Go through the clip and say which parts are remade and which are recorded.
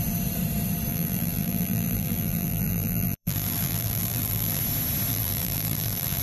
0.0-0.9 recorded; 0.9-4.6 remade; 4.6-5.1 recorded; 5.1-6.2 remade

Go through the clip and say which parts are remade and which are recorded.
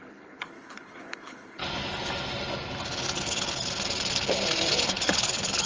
0.0-1.6 remade; 1.6-5.0 recorded; 5.0-5.7 remade